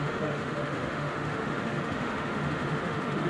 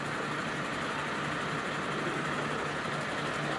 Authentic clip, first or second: second